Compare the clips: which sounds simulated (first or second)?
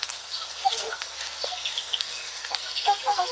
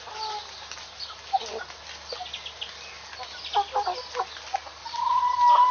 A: first